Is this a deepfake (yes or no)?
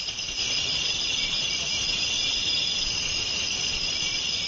yes